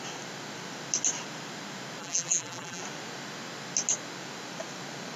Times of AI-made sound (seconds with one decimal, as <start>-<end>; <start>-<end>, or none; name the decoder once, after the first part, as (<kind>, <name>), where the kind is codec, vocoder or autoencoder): 2.0-2.8 (vocoder, BigVGAN v2)